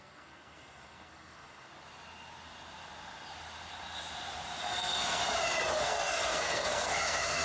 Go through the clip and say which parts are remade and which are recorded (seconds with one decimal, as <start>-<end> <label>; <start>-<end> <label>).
0.0-1.7 remade; 1.7-4.6 recorded; 4.6-5.2 remade; 5.2-5.8 recorded; 5.8-7.4 remade